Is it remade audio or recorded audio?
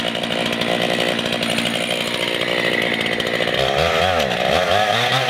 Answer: recorded